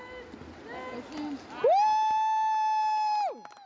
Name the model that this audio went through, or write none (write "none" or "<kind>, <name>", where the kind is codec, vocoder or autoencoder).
none